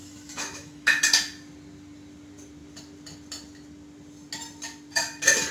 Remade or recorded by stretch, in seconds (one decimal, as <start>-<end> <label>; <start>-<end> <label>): 0.0-1.0 remade; 1.0-5.5 recorded